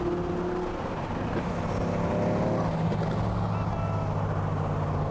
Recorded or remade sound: recorded